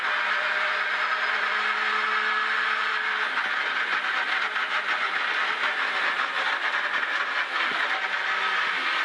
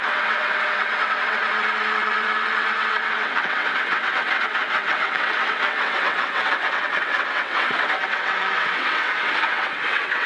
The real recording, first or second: first